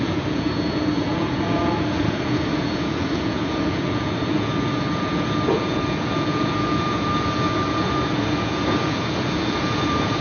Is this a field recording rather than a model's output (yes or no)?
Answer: no